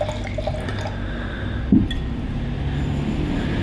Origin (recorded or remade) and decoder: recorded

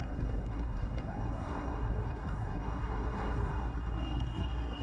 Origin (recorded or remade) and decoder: remade, codec, SNAC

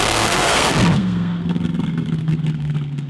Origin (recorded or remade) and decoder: remade, codec, SNAC